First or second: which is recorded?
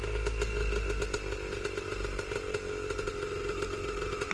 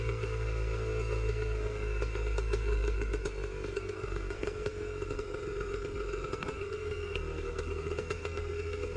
first